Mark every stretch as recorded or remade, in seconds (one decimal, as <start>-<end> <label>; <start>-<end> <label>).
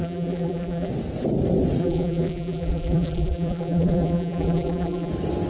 0.0-0.9 remade; 0.9-1.8 recorded; 1.8-5.1 remade; 5.1-5.5 recorded